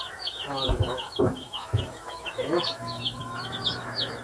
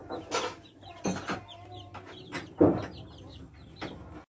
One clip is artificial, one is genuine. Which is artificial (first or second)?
first